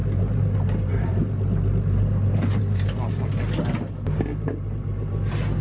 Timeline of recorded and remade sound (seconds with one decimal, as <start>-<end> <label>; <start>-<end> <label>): 0.0-5.6 recorded